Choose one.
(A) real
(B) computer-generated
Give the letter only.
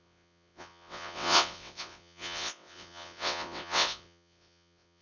B